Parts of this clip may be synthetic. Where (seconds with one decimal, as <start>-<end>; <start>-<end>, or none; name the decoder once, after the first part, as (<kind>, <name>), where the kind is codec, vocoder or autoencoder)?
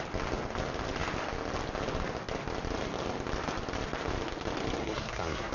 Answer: 4.8-5.5 (codec, SNAC)